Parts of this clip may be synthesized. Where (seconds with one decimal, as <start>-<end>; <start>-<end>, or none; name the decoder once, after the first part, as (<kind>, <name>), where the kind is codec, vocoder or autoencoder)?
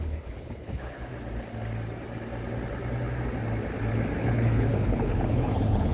0.0-1.1 (codec, HILCodec); 4.2-5.9